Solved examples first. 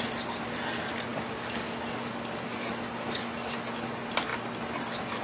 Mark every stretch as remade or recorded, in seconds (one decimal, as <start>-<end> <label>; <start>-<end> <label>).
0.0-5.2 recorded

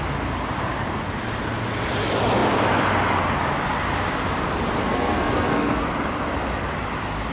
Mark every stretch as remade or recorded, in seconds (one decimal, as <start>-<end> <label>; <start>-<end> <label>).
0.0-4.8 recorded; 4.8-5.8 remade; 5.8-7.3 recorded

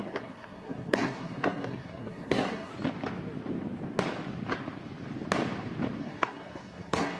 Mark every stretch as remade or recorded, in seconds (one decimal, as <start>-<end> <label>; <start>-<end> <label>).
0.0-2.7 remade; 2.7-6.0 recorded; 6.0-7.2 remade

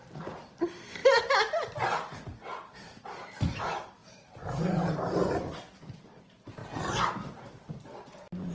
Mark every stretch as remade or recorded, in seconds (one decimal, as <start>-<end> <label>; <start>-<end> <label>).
0.0-1.0 remade; 1.0-2.7 recorded; 2.7-6.6 remade; 6.6-7.5 recorded; 7.5-8.5 remade

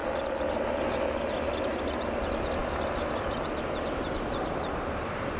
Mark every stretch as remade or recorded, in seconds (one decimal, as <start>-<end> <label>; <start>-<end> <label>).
0.0-5.4 recorded

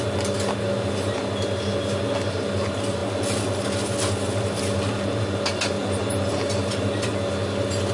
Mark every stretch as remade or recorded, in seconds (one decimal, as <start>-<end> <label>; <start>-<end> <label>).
0.0-7.9 recorded

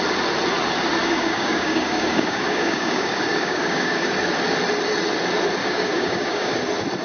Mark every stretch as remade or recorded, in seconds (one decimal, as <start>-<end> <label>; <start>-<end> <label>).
0.0-1.0 recorded; 1.0-4.1 remade; 4.1-5.6 recorded; 5.6-6.5 remade; 6.5-7.0 recorded

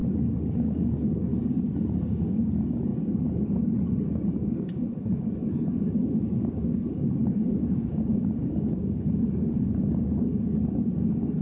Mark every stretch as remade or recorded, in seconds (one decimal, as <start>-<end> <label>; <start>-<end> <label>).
0.0-1.3 remade; 1.3-2.0 recorded; 2.0-2.9 remade; 2.9-4.1 recorded; 4.1-11.4 remade